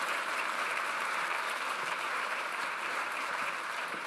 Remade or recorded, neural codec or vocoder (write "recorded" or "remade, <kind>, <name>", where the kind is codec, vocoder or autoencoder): remade, vocoder, BigVGAN v2